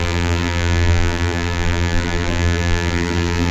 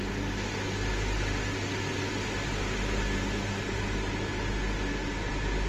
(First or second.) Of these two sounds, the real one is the second